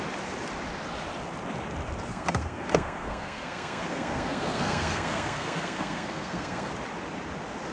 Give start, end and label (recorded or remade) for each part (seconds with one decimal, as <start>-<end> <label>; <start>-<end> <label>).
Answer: 0.0-2.1 recorded; 2.1-6.7 remade; 6.7-7.7 recorded